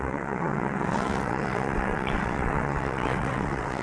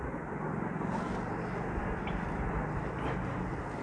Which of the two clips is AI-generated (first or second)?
first